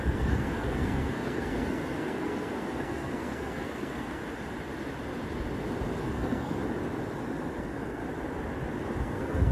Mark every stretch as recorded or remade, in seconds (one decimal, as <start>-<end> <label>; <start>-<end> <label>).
0.0-4.2 remade; 4.2-6.0 recorded; 6.0-6.6 remade; 6.6-7.6 recorded; 7.6-8.0 remade; 8.0-9.0 recorded; 9.0-9.5 remade